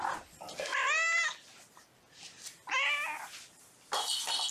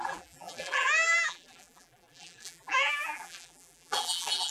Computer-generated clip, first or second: second